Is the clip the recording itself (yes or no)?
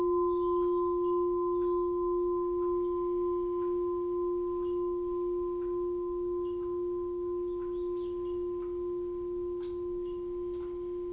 yes